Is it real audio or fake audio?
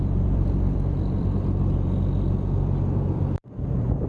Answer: fake